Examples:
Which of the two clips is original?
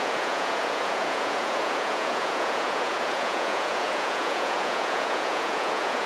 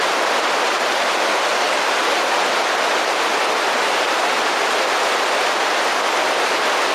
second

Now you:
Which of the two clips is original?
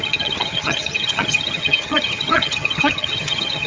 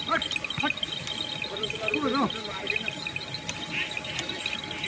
second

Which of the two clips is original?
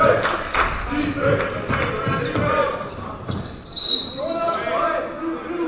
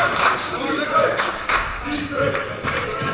first